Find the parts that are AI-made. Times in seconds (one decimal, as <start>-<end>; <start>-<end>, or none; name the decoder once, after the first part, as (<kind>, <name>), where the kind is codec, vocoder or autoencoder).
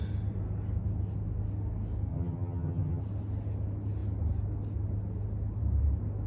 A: 2.1-3.0 (vocoder, HiFi-GAN)